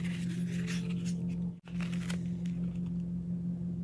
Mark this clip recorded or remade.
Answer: recorded